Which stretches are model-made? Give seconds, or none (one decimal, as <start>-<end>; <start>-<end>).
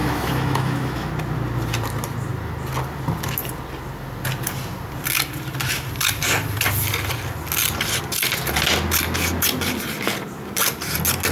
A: 0.0-1.1